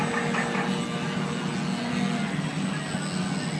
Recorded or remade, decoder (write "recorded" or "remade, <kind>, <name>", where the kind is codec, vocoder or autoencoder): recorded